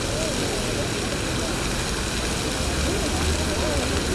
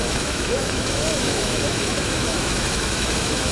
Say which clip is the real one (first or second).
first